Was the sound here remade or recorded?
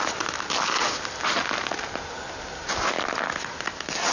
recorded